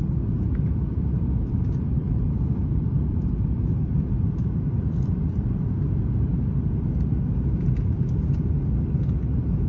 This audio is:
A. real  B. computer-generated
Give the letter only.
B